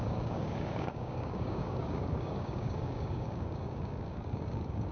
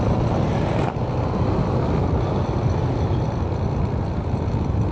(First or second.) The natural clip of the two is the second